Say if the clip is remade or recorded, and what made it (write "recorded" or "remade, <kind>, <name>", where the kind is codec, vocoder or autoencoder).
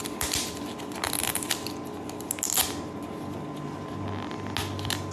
recorded